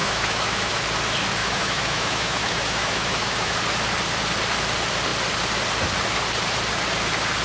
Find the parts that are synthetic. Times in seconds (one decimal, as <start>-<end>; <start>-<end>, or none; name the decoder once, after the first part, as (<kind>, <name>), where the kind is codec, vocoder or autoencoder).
0.0-0.7 (autoencoder, DAC-VAE); 1.4-3.5